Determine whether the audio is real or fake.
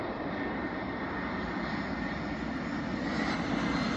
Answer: real